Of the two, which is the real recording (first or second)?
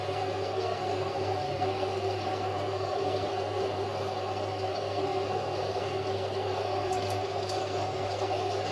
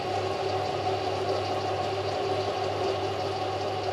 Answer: second